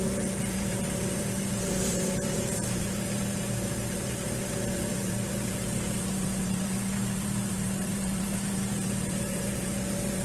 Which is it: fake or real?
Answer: fake